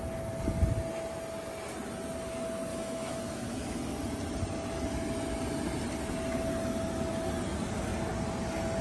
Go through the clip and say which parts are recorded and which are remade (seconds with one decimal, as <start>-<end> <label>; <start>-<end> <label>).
0.0-2.7 recorded; 2.7-3.8 remade; 3.8-8.8 recorded